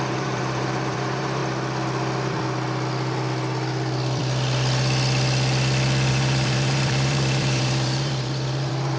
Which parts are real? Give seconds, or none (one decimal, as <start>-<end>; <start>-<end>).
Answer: 1.4-6.1